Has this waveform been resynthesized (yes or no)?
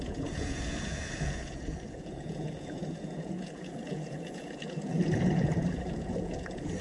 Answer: yes